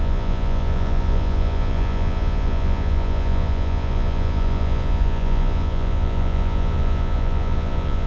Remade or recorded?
remade